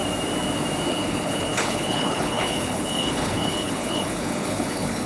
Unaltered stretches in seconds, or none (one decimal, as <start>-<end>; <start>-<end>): 0.0-0.9